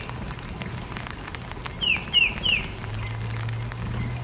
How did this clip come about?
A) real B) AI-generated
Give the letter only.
A